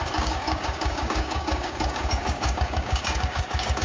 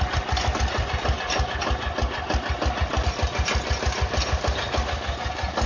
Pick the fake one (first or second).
first